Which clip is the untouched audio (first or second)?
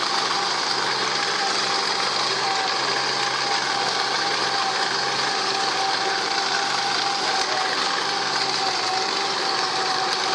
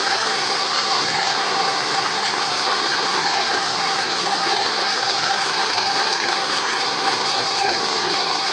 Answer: first